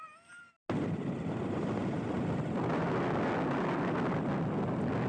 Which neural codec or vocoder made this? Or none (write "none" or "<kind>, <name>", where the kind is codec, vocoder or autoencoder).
none